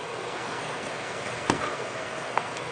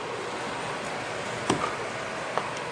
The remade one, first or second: first